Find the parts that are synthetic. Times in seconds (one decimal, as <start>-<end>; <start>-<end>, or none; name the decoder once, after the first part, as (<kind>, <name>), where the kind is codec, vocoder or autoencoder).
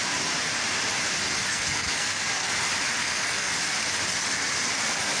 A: 1.5-2.5 (codec, SNAC); 3.0-3.5